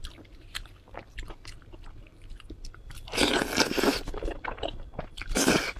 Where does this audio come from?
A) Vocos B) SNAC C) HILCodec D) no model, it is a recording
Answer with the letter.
D